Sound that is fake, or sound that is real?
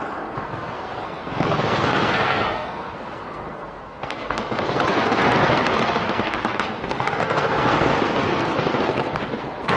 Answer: fake